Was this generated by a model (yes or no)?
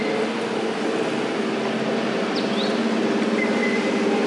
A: no